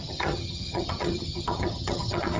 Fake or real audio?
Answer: fake